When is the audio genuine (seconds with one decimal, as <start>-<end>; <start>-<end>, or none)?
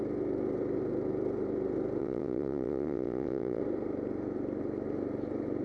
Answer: 0.0-2.0; 3.6-5.6